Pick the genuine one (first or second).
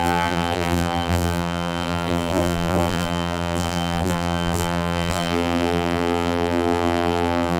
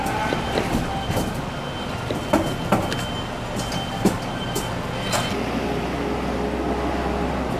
second